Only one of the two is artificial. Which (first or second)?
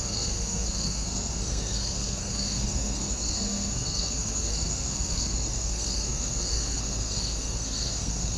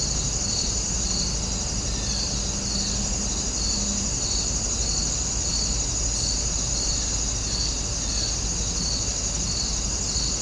first